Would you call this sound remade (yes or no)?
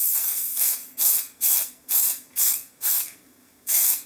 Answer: yes